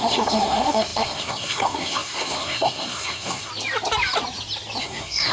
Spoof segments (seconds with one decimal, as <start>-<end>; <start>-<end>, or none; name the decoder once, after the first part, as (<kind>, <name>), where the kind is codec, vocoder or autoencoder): 0.0-3.5 (codec, SNAC); 4.8-5.3